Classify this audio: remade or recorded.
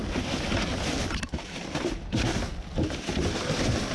recorded